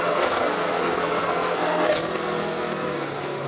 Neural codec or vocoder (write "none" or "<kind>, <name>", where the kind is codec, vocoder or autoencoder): codec, SNAC